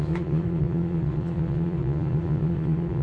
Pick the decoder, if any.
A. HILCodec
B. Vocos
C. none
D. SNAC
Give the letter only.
B